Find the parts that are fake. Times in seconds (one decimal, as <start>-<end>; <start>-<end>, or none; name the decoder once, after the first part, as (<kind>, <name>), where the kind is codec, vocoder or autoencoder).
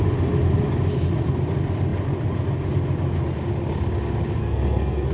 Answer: 4.4-5.1 (codec, SNAC)